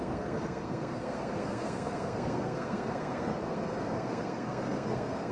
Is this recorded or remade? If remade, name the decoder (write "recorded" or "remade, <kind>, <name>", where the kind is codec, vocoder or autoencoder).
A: remade, codec, SNAC